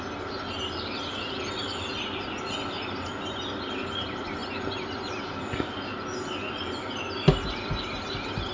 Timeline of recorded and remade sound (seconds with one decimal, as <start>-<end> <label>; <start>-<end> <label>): 0.0-8.5 recorded